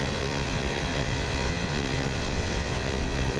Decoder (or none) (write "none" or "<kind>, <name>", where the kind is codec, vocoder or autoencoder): vocoder, WaveNeXt